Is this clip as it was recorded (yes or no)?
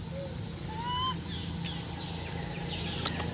yes